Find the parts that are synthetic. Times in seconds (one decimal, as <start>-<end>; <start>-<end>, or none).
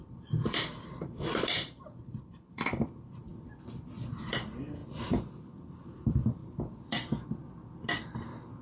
0.0-3.3; 4.1-6.4